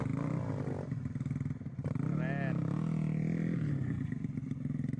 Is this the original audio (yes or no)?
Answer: yes